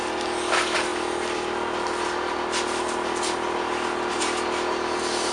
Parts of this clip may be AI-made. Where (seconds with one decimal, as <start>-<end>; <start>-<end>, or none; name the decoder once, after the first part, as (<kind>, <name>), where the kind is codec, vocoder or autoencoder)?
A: none